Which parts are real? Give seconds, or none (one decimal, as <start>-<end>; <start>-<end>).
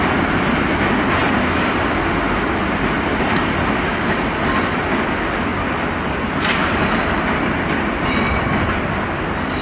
0.0-5.5; 6.3-9.6